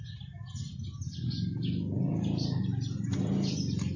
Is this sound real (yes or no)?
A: yes